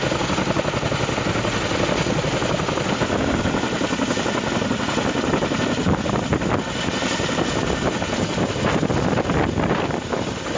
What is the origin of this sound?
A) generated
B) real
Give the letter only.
B